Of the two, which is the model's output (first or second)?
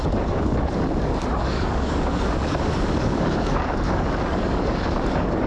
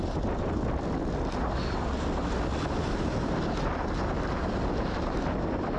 first